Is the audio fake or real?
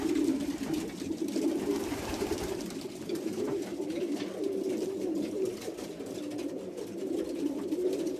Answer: real